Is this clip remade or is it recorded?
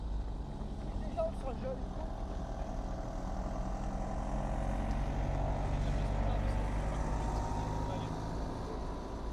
recorded